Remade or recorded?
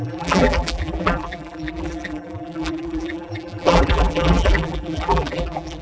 remade